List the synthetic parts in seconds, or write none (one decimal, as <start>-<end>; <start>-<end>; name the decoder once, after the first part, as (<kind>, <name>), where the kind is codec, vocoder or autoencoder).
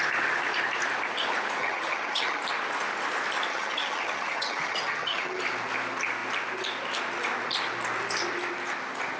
1.6-2.4 (vocoder, HiFi-GAN); 3.5-5.4